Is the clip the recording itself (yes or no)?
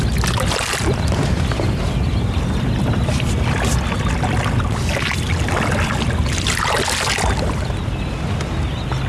yes